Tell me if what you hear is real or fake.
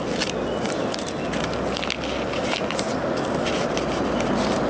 real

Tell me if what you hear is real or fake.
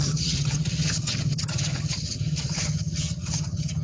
fake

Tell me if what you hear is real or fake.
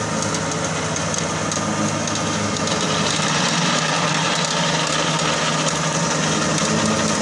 real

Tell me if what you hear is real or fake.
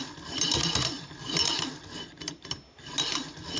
real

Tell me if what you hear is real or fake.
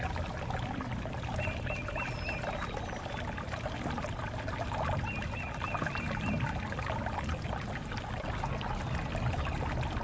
real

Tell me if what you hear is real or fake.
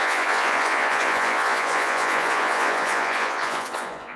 fake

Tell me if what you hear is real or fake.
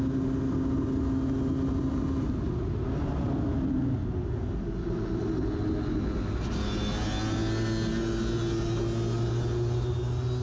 real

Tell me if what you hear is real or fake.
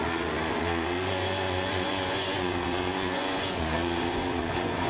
fake